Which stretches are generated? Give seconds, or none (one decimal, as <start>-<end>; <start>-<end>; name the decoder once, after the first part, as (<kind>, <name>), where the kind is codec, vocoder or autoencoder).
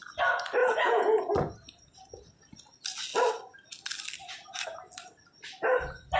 0.6-1.3 (vocoder, Vocos)